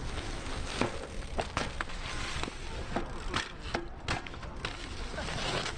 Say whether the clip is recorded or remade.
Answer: recorded